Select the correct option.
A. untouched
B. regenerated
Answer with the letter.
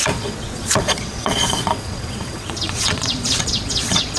B